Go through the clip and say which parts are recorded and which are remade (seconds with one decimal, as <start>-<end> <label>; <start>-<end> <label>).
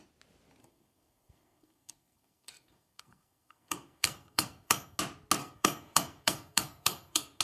0.0-0.6 recorded; 0.6-5.0 remade; 5.0-5.4 recorded; 5.4-7.4 remade